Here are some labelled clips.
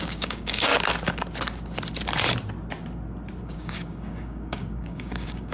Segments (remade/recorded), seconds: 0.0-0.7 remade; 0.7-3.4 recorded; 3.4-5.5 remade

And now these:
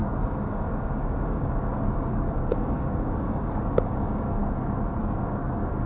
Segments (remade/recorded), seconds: 0.0-4.4 remade; 4.4-5.0 recorded; 5.0-5.9 remade

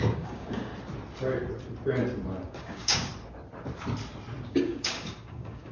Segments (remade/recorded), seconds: 0.0-0.7 remade; 0.7-2.4 recorded; 2.4-3.1 remade; 3.1-4.5 recorded; 4.5-5.7 remade

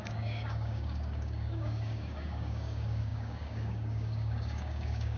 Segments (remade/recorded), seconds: 0.0-5.2 remade

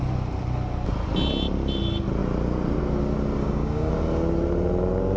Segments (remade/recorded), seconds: 0.0-3.4 recorded; 3.4-3.9 remade; 3.9-5.2 recorded

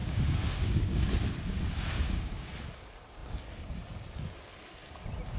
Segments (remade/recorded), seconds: 0.0-1.1 remade; 1.1-1.5 recorded; 1.5-2.5 remade; 2.5-5.4 recorded

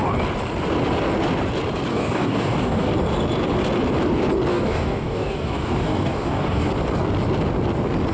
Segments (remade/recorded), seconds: 0.0-1.9 recorded; 1.9-2.9 remade; 2.9-4.5 recorded; 4.5-6.7 remade; 6.7-8.1 recorded

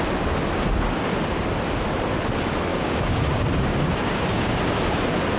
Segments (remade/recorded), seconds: 0.0-2.7 recorded; 2.7-4.6 remade; 4.6-5.4 recorded